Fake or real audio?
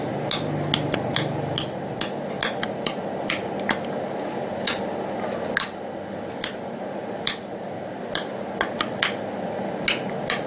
real